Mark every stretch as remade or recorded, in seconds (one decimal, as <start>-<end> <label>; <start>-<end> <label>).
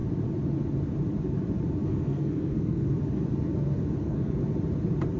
0.0-1.8 recorded; 1.8-3.0 remade; 3.0-4.0 recorded; 4.0-4.4 remade; 4.4-5.2 recorded